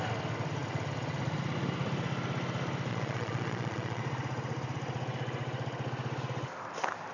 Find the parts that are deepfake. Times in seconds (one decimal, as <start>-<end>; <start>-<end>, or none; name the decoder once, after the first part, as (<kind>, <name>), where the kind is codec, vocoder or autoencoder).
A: 2.9-4.0 (vocoder, Vocos)

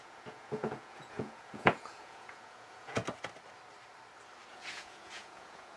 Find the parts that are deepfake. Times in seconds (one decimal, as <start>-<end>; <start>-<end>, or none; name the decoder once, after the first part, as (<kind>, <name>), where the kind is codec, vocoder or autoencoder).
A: 0.0-3.0 (vocoder, Vocos); 4.5-5.8

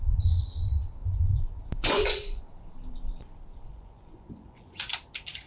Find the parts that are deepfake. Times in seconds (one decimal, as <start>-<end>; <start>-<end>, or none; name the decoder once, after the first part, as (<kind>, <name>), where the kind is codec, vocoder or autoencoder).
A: 1.0-2.4 (vocoder, Vocos); 3.7-4.9

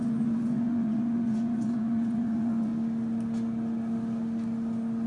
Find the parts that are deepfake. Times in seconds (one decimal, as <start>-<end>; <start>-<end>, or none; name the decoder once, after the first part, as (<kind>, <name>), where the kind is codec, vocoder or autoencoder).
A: 0.0-2.7 (vocoder, Vocos)

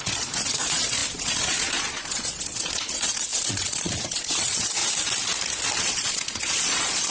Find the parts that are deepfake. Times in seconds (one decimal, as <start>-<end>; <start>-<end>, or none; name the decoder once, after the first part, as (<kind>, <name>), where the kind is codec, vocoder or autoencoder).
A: 0.0-4.8 (vocoder, Vocos); 5.8-7.1